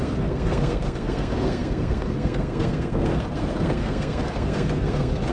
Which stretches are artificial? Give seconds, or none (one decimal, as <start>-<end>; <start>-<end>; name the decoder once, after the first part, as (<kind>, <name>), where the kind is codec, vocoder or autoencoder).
0.0-5.3 (codec, SNAC)